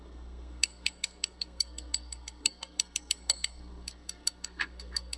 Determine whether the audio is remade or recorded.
remade